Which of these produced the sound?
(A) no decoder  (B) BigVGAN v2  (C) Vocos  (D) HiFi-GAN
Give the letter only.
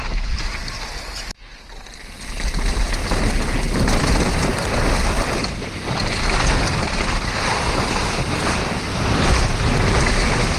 A